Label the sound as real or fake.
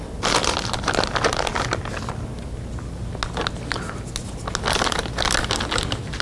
real